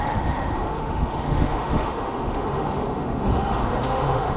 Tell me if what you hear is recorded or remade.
remade